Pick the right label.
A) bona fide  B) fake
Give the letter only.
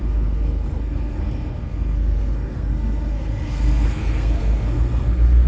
B